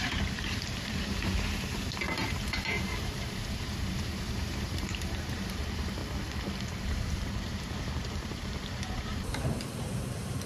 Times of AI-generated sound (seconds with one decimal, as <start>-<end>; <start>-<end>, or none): 0.0-6.0; 6.8-10.5

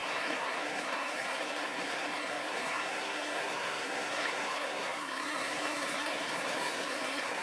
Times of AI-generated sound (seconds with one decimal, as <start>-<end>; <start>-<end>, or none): 0.0-7.4

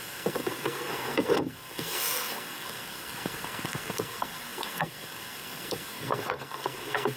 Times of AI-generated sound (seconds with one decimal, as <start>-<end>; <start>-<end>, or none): 0.0-7.2

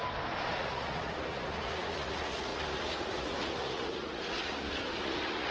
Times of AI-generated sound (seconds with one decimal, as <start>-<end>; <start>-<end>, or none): 0.6-5.5

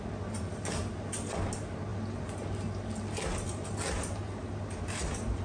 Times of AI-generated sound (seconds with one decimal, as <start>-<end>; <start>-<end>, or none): none

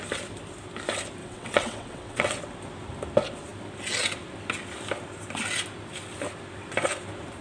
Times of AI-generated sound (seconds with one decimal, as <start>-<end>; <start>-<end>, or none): 1.2-2.4